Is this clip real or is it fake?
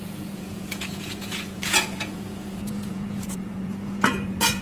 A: fake